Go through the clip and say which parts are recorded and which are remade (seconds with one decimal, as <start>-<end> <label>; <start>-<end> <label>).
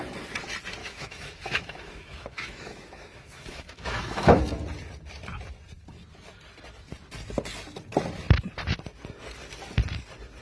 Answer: 0.0-0.8 recorded; 0.8-4.4 remade; 4.4-10.4 recorded